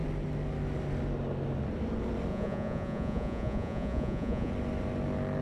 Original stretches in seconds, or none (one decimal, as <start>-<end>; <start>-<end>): 0.0-2.3; 4.5-5.4